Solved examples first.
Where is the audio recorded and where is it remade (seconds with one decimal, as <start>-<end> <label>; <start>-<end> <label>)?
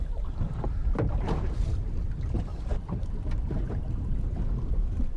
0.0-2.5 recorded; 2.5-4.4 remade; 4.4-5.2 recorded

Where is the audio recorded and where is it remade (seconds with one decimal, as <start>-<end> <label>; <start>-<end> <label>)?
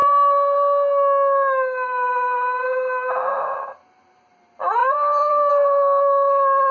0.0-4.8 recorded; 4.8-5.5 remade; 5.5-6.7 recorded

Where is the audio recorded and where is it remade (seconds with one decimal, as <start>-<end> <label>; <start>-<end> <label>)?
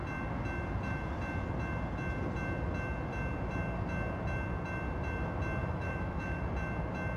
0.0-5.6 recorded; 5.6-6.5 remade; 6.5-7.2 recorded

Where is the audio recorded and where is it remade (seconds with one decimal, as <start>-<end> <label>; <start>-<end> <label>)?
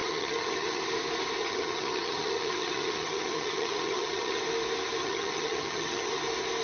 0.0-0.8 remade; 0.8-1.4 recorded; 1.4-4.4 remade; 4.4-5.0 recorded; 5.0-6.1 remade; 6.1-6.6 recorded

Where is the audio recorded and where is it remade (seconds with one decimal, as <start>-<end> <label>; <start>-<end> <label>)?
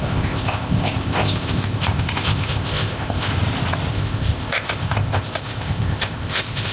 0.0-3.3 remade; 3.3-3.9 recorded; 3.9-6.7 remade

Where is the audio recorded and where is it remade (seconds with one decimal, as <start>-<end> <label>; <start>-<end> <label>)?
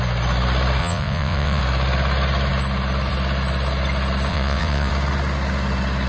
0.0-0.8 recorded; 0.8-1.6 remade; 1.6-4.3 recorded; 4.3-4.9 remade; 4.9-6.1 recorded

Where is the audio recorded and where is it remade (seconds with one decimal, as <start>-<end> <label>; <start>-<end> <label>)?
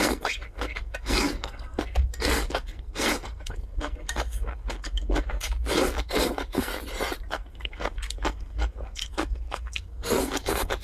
0.0-6.7 remade; 6.7-7.3 recorded; 7.3-10.8 remade